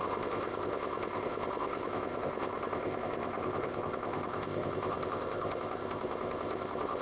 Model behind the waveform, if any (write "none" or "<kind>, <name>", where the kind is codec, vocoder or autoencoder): codec, ZipCodec